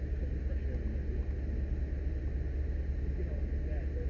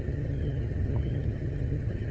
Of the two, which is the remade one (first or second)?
second